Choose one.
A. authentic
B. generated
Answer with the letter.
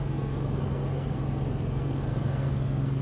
B